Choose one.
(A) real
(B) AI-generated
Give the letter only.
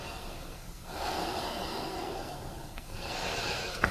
B